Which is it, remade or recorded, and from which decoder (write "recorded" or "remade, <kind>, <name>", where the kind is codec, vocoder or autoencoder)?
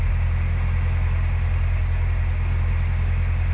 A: recorded